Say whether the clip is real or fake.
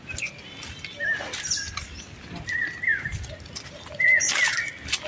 real